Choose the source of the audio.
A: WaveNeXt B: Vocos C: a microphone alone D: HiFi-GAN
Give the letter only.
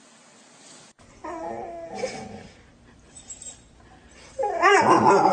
C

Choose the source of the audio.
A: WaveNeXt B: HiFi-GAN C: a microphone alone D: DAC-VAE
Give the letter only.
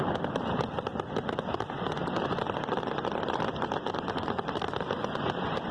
C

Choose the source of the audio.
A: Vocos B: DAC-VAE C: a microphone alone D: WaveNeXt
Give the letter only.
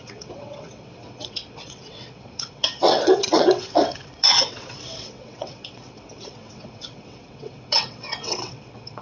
D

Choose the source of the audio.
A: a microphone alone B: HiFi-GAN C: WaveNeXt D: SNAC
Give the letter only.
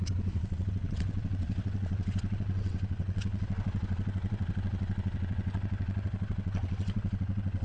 C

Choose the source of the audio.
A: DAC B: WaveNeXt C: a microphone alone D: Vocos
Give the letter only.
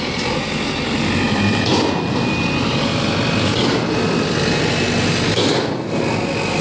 C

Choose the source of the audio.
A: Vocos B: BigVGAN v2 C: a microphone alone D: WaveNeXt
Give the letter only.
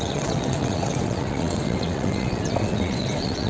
D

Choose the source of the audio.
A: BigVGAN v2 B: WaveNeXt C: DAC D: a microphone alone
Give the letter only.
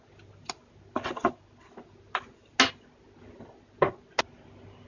D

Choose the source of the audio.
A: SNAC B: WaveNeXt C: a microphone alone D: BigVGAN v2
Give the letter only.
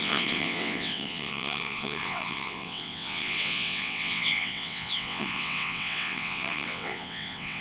B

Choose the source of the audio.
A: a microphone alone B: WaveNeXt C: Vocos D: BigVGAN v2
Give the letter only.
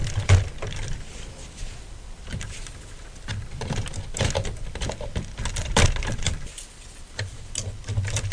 A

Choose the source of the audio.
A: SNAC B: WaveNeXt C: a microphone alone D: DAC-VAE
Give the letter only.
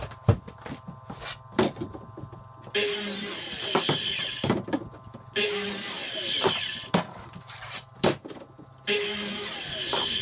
C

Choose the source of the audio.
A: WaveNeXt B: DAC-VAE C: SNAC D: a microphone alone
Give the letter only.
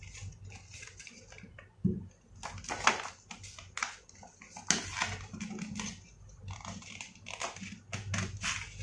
D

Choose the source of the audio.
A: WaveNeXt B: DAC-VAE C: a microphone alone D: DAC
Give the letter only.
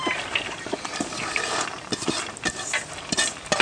C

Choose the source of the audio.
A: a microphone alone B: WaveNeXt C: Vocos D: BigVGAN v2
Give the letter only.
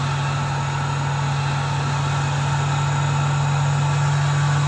A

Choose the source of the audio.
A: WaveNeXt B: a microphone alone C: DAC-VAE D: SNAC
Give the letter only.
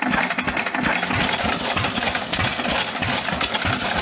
B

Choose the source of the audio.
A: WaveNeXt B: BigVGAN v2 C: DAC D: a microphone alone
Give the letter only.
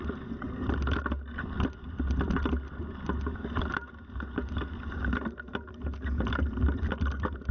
D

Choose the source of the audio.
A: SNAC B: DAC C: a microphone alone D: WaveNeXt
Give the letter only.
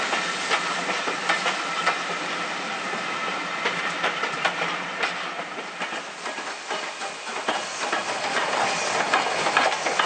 C